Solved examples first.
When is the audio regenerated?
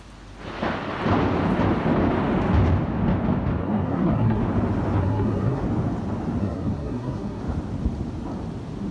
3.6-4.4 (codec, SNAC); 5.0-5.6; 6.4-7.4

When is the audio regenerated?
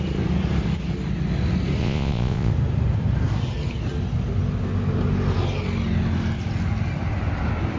1.8-2.5 (vocoder, Vocos)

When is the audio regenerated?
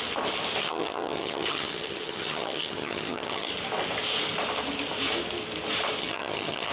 0.6-3.5 (vocoder, HiFi-GAN); 6.0-6.7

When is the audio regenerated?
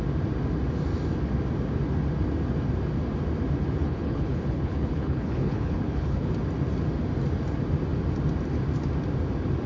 3.8-6.3 (codec, HILCodec)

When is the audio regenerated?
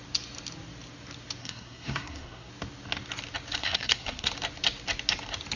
1.4-2.5 (codec, SNAC); 3.6-4.3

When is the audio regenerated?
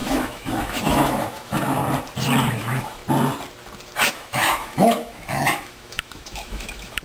0.0-1.8 (autoencoder, DAC-VAE); 2.4-3.0; 4.1-7.0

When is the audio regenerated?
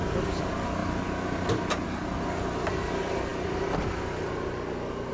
none